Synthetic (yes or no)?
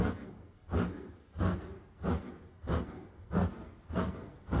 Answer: yes